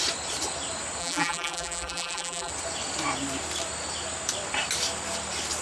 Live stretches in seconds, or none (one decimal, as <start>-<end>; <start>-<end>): 0.0-1.0; 2.5-5.6